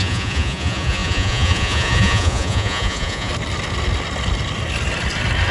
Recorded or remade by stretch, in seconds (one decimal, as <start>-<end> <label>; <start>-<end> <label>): 0.0-3.3 remade; 3.3-5.5 recorded